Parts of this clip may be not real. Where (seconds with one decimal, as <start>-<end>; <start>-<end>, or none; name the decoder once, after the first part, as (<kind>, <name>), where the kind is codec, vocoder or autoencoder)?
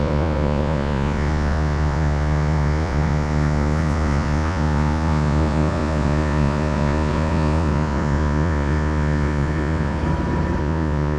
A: 0.0-10.0 (vocoder, Vocos); 10.6-11.2